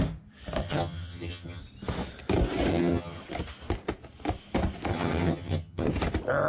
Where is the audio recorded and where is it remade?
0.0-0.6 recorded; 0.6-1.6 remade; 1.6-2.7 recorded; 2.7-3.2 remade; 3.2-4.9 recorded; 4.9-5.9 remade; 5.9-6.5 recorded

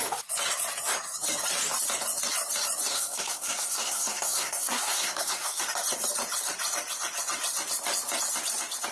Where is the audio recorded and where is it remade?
0.0-2.9 recorded; 2.9-5.6 remade; 5.6-8.9 recorded